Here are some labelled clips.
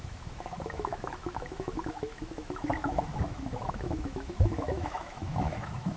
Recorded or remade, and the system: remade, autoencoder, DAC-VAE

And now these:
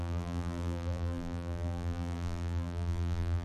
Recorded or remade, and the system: remade, vocoder, BigVGAN v2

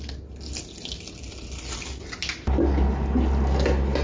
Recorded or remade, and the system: recorded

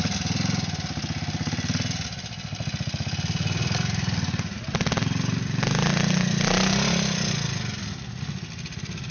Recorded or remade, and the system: recorded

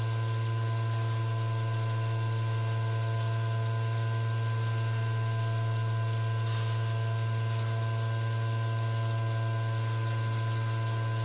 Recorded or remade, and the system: recorded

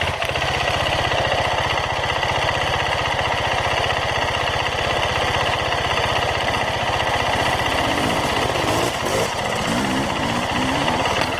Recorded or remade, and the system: recorded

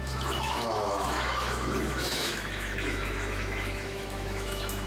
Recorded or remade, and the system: remade, autoencoder, DAC-VAE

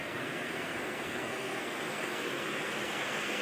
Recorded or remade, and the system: remade, codec, SNAC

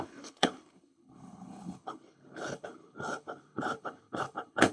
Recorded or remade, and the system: remade, codec, HILCodec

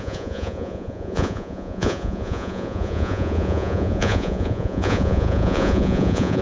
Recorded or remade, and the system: remade, vocoder, Vocos